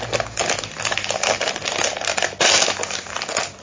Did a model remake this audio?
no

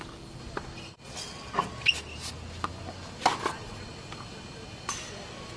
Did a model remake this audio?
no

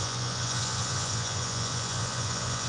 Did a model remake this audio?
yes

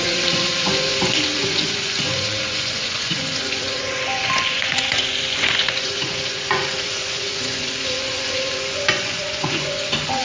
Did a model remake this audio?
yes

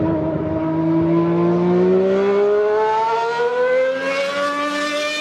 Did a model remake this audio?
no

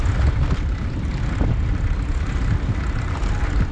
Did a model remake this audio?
no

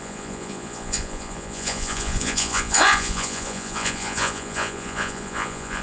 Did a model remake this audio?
yes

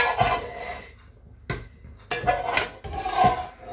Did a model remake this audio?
no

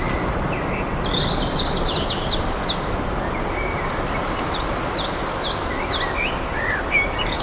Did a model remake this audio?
no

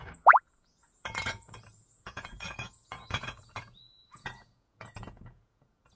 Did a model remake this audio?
yes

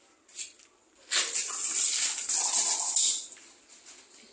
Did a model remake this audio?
no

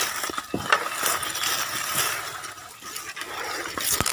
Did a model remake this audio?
no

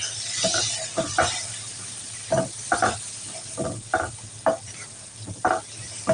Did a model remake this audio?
no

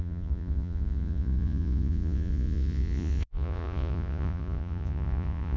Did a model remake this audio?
yes